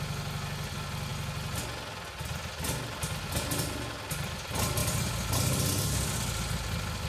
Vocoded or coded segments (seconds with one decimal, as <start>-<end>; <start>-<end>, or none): none